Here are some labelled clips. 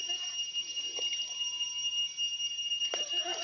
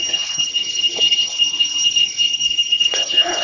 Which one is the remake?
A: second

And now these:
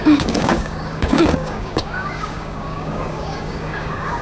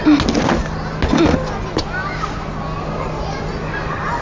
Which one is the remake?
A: first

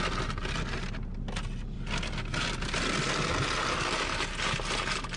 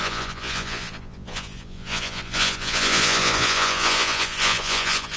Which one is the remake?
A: second